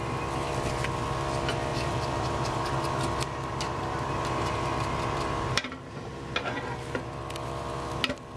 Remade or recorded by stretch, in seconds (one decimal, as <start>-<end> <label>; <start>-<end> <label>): 0.0-1.7 recorded; 1.7-6.1 remade; 6.1-8.4 recorded